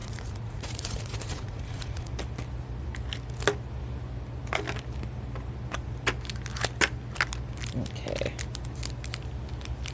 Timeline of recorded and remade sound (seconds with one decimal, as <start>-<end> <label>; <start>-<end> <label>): 0.0-2.1 remade; 2.1-9.9 recorded